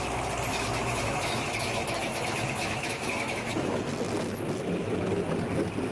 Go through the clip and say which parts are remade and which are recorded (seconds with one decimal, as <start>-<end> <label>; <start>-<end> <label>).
0.0-0.5 recorded; 0.5-3.8 remade; 3.8-5.9 recorded